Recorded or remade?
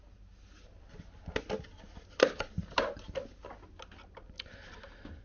recorded